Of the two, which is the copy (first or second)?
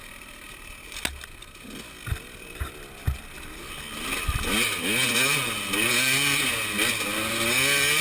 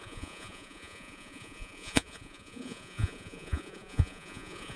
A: second